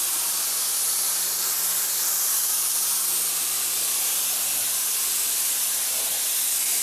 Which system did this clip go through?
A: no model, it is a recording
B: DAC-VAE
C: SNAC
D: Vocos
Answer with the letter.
A